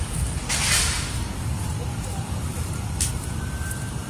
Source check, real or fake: fake